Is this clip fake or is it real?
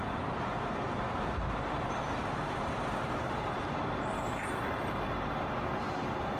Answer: real